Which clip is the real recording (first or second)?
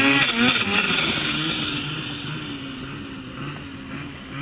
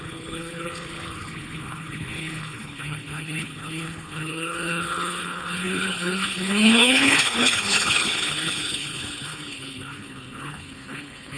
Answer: first